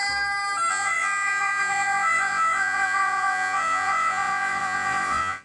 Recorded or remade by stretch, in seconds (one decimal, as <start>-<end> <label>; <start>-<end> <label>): 0.0-0.7 recorded; 0.7-5.4 remade